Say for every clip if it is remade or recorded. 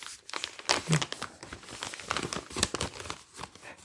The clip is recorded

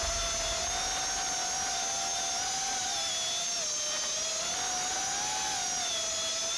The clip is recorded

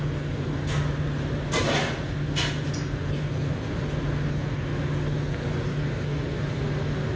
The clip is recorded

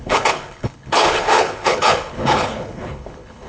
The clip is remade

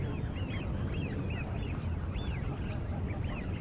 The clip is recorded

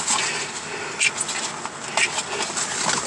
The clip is recorded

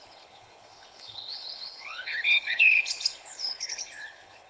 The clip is remade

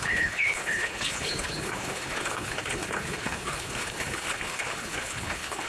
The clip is remade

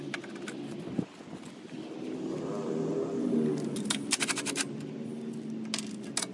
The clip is recorded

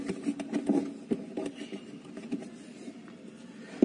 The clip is recorded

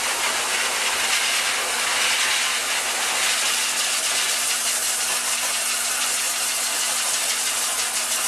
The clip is recorded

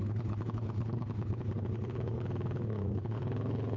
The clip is remade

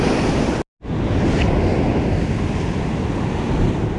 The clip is recorded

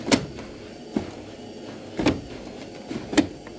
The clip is recorded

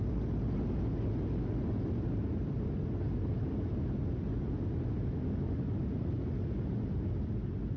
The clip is recorded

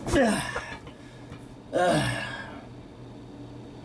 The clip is recorded